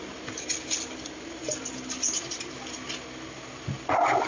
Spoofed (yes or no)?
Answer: no